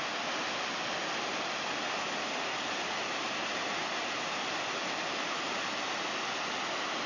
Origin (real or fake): real